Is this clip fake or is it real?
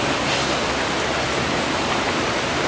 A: real